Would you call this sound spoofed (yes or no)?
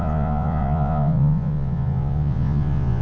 yes